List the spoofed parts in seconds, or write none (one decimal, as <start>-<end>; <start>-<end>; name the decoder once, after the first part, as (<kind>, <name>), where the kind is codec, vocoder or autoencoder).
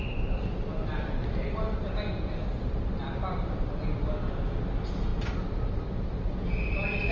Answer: 3.1-3.7 (vocoder, BigVGAN v2); 5.1-6.3